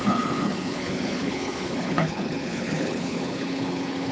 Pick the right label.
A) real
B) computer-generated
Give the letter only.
B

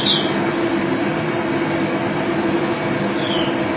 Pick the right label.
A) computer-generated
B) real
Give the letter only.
B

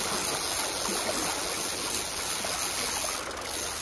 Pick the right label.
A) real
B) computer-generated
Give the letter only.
A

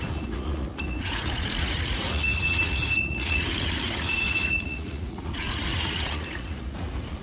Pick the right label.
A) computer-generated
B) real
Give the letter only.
A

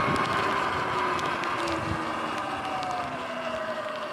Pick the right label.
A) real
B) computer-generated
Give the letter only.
A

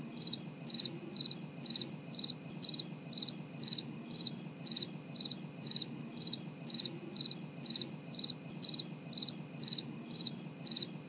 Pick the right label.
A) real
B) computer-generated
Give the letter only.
A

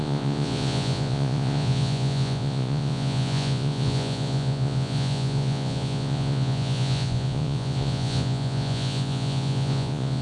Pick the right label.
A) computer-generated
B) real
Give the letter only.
A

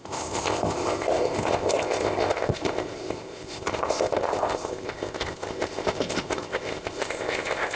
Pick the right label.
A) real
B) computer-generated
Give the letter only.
B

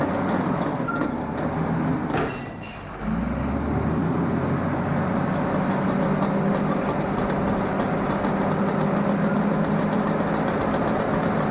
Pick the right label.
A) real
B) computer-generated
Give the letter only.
A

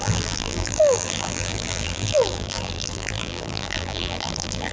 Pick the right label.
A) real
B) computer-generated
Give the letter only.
B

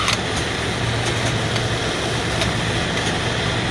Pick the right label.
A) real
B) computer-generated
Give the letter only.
A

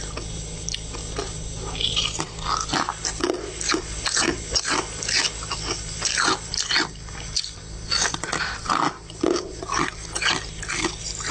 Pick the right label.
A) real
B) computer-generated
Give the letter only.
A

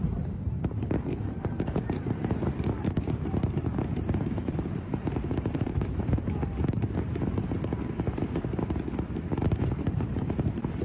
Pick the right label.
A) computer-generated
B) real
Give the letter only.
A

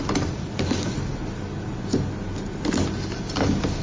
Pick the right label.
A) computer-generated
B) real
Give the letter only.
B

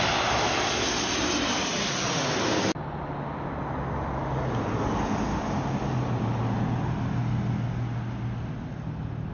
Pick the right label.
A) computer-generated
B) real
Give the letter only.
B